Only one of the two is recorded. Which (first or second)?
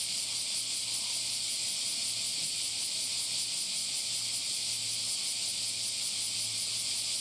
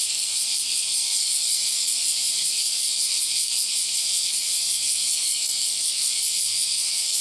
first